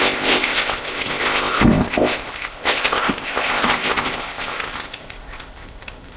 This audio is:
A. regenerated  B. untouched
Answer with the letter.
A